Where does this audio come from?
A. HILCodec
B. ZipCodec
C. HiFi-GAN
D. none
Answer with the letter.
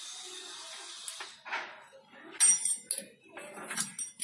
D